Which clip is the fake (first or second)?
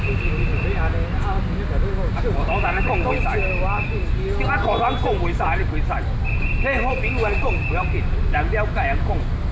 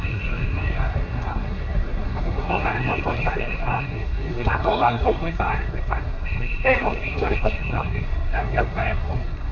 second